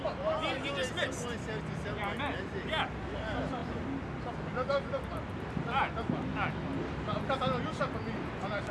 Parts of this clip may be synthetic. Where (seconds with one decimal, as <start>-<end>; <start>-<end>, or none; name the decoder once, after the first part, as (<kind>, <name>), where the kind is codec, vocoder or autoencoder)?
none